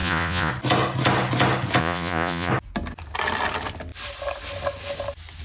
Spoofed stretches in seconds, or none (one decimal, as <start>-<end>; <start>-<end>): 0.0-0.5; 1.8-2.5